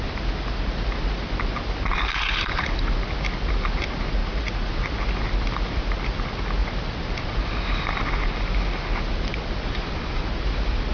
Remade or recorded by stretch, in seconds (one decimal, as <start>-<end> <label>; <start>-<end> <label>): 0.0-4.2 recorded; 4.2-4.7 remade; 4.7-10.9 recorded